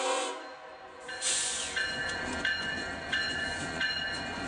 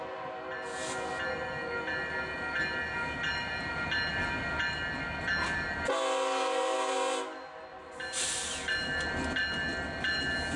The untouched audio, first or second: second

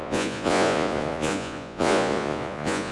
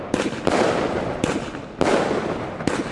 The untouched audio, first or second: second